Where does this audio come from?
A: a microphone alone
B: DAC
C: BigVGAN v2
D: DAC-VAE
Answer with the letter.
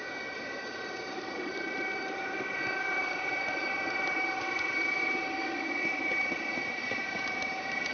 C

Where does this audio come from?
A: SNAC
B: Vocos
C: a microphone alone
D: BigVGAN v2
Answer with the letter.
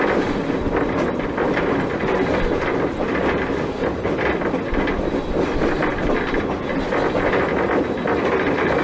C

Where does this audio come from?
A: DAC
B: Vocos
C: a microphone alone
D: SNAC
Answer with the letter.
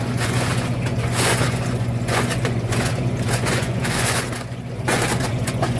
B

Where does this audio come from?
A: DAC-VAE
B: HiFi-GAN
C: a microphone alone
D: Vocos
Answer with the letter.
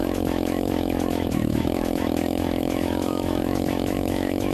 A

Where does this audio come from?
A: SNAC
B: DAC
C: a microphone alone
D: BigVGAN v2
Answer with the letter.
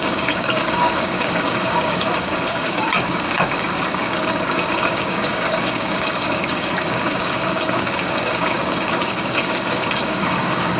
B